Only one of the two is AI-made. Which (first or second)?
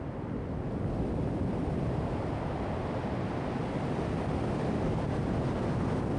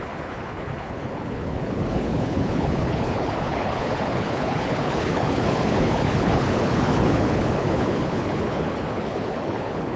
second